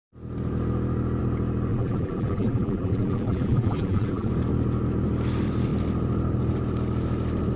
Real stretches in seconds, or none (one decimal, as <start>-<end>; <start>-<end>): 0.0-1.7; 4.3-7.6